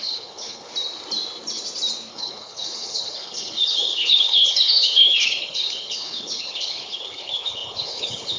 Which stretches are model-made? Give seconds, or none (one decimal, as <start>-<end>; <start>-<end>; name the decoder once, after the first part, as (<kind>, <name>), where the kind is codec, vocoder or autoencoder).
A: 0.0-0.7 (codec, HILCodec); 2.1-8.4